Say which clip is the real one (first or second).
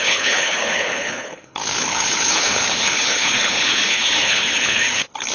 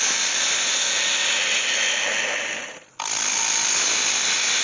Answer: second